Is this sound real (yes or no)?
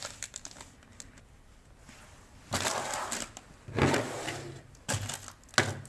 yes